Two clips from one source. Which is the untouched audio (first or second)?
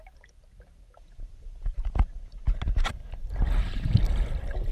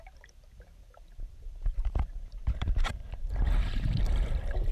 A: first